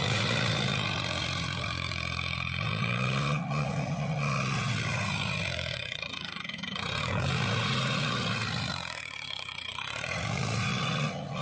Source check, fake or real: fake